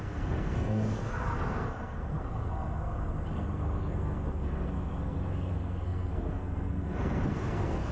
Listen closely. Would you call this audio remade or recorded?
remade